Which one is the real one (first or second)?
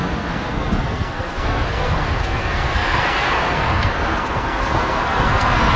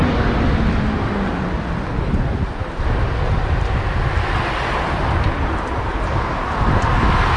second